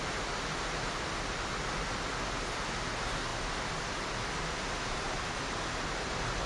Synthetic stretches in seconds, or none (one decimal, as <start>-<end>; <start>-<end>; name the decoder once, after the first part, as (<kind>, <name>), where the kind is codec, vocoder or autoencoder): none